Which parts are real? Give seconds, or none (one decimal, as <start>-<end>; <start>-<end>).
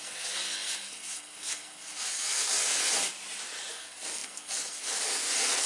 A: 2.9-3.7